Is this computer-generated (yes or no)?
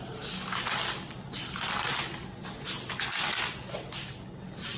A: no